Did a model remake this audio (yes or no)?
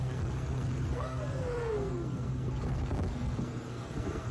yes